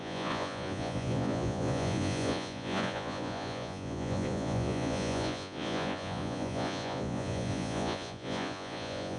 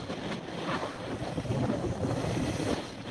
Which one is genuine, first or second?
second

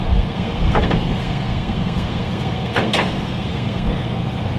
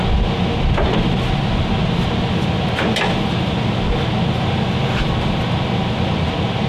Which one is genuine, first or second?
second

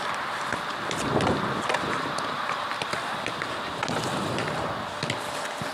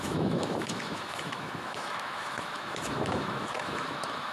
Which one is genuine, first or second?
first